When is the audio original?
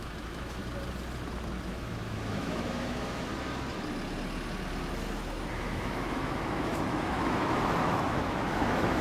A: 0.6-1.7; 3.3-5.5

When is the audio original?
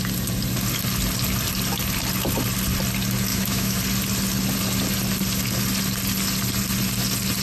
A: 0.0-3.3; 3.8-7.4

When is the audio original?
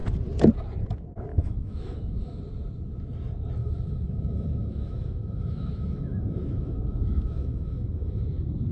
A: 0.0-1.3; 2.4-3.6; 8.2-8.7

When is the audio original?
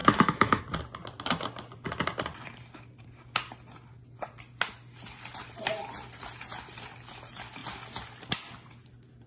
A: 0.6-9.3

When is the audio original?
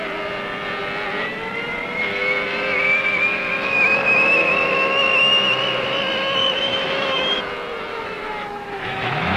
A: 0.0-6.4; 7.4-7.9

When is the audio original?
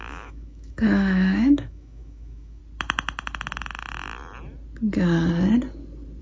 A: 2.6-6.2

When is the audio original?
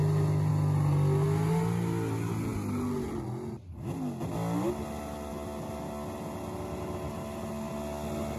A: 0.0-8.4